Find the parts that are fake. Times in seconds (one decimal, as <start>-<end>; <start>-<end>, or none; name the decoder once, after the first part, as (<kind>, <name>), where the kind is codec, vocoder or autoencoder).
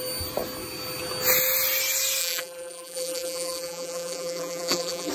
2.2-5.1 (vocoder, BigVGAN v2)